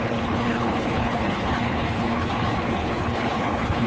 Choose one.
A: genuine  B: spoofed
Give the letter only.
B